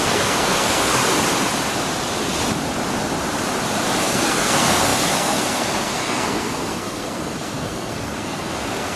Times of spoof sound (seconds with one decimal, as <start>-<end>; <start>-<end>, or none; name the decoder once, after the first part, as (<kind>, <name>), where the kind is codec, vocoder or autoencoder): 0.0-1.0 (codec, SNAC); 4.0-9.0

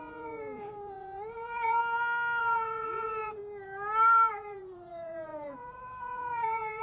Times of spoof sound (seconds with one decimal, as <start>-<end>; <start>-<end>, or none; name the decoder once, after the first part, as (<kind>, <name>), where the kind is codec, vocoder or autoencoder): 0.0-1.8 (vocoder, Vocos); 2.4-3.4; 4.3-6.8

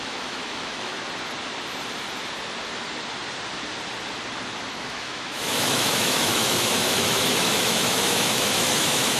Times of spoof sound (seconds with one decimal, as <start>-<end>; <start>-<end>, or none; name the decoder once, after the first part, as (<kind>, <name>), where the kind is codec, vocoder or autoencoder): 0.0-0.9 (autoencoder, DAC-VAE); 4.8-9.2

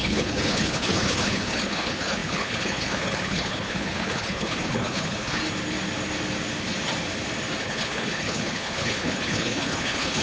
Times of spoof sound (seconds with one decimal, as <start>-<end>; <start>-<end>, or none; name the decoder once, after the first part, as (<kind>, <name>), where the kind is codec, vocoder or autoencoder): 0.0-5.4 (codec, HILCodec); 7.6-10.2

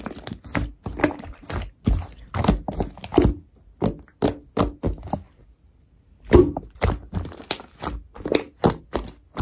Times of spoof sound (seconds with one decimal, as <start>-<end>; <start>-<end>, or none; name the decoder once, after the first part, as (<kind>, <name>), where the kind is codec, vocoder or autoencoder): none

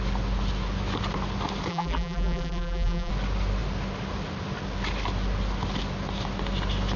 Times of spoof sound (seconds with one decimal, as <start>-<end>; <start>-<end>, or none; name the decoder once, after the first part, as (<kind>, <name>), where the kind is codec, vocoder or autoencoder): 1.7-3.1 (vocoder, BigVGAN v2)